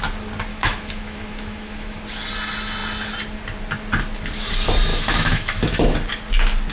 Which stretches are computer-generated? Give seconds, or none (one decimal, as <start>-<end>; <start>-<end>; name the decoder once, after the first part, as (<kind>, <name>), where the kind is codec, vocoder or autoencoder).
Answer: 0.5-2.0 (autoencoder, DAC-VAE); 4.9-5.6